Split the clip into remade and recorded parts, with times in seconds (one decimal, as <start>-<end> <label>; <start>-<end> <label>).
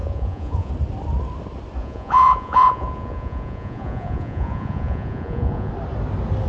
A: 0.0-0.7 remade; 0.7-1.8 recorded; 1.8-5.7 remade; 5.7-6.5 recorded